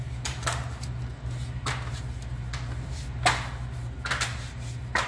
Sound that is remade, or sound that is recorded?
recorded